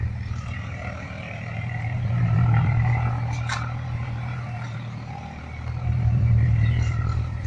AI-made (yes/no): yes